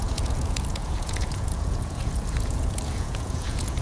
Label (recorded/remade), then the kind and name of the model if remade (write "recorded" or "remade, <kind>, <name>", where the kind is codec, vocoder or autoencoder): remade, vocoder, Vocos